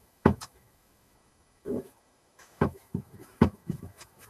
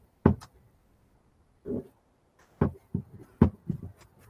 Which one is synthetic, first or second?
first